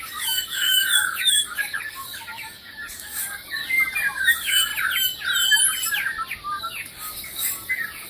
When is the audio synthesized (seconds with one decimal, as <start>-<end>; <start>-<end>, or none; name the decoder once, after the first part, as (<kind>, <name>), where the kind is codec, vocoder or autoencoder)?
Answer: 0.0-3.6 (codec, DAC); 4.3-4.7; 6.6-8.1